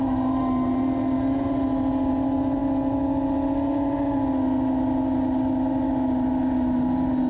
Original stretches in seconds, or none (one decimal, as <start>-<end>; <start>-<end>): 0.0-7.3